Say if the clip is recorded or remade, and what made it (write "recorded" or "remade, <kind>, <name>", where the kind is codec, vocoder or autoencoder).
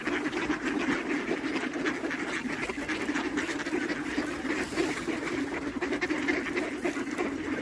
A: recorded